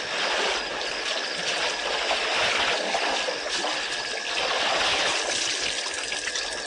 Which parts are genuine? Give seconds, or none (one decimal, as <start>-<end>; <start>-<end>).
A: 0.0-6.7